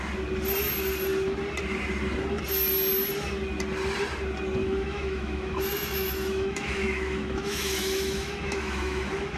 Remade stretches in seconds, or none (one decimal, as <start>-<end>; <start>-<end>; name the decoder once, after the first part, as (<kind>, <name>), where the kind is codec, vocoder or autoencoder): 4.6-9.4 (autoencoder, DAC-VAE)